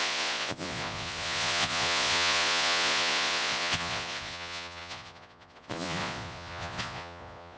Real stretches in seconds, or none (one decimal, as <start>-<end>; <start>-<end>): none